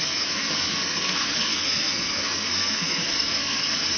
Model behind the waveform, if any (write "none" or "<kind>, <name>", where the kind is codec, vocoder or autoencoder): codec, SNAC